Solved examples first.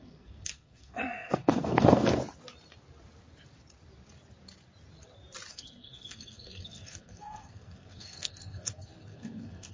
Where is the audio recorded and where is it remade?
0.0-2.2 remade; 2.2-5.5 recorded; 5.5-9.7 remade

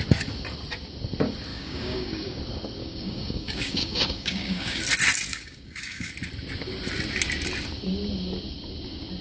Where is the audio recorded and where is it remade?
0.0-1.5 recorded; 1.5-2.4 remade; 2.4-2.8 recorded; 2.8-4.8 remade; 4.8-5.3 recorded; 5.3-6.1 remade; 6.1-9.2 recorded